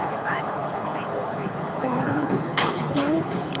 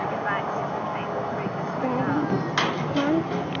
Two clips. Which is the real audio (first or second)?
second